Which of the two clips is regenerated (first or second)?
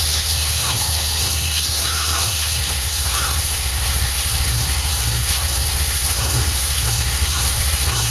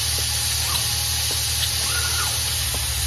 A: first